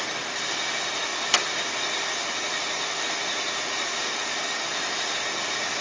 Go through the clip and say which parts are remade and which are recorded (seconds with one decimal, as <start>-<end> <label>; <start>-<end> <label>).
0.0-5.8 recorded